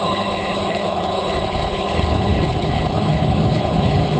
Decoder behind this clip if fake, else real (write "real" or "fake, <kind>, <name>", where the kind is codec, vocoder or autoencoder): fake, codec, HILCodec